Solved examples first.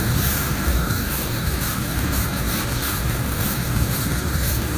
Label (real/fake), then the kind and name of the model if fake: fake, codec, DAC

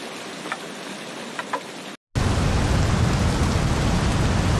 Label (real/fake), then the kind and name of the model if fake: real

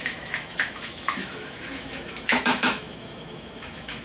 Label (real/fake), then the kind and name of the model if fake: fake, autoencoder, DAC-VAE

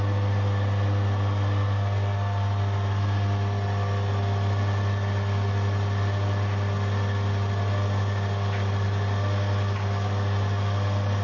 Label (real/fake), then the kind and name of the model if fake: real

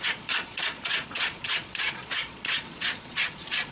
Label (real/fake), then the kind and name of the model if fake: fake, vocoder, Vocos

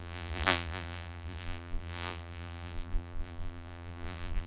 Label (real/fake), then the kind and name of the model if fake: fake, vocoder, BigVGAN v2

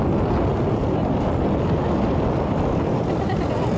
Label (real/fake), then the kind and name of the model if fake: real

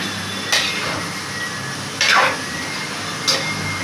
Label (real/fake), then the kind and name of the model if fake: real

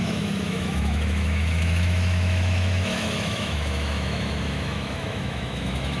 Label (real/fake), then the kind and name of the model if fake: fake, autoencoder, DAC-VAE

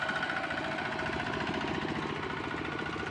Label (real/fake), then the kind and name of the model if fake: real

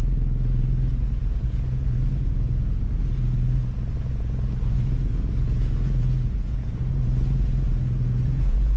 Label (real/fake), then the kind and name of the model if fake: fake, vocoder, Vocos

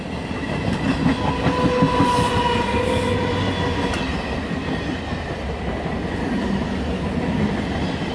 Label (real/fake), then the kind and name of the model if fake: real